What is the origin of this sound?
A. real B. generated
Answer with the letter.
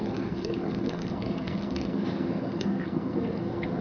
B